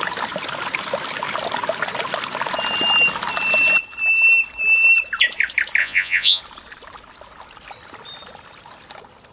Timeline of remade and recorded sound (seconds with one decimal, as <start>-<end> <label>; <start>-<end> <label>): 0.0-5.8 recorded; 5.8-6.4 remade; 6.4-9.3 recorded